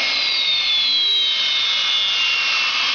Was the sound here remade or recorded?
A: recorded